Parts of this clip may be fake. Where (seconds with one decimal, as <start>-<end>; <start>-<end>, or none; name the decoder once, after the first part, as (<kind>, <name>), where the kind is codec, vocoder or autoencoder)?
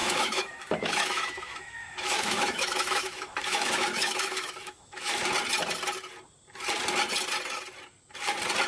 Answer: 0.0-5.1 (autoencoder, DAC-VAE)